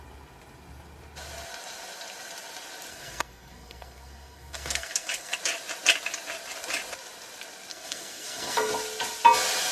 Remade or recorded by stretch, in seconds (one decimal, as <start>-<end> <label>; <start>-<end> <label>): 0.0-2.9 recorded; 2.9-5.4 remade; 5.4-7.7 recorded; 7.7-8.7 remade; 8.7-9.7 recorded